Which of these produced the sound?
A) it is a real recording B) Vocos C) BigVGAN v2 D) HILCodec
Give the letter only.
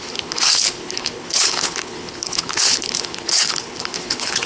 D